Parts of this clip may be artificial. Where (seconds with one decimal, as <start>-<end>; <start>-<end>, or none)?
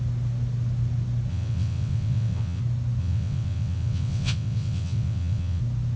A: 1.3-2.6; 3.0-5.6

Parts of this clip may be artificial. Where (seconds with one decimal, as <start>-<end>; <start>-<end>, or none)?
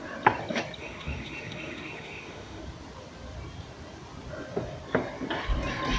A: 0.8-2.6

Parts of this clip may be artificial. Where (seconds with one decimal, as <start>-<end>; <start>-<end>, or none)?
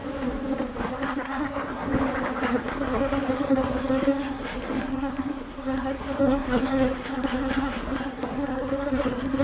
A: 0.8-1.9; 2.4-9.4